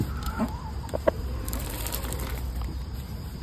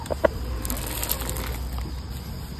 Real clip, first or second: second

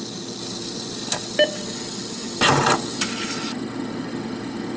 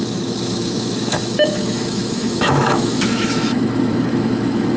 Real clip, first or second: first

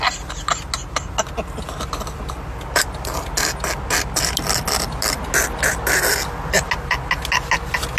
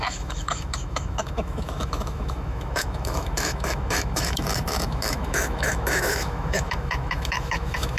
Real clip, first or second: first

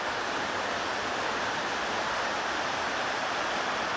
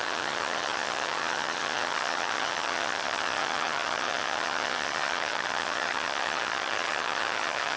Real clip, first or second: first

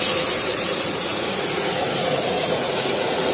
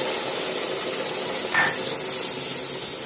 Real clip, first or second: second